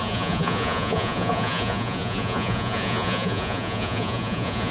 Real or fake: fake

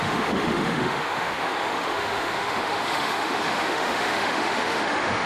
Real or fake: fake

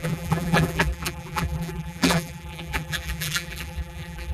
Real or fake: fake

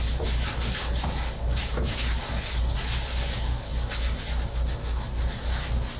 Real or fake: real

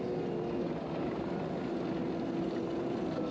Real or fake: real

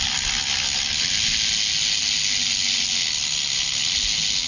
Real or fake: real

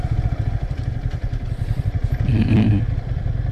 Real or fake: fake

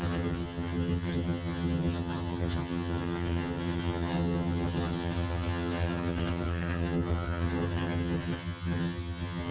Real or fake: fake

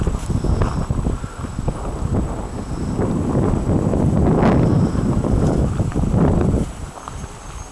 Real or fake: real